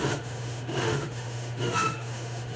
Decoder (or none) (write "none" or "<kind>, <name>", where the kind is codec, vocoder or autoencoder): autoencoder, DAC-VAE